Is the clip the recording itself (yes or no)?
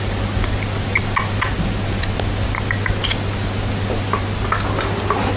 yes